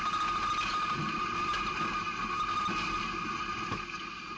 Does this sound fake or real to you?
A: real